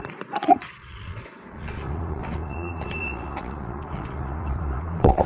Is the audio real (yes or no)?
no